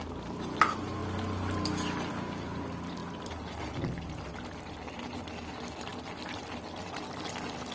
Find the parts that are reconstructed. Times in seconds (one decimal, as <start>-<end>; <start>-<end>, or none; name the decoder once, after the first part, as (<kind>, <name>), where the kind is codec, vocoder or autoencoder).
none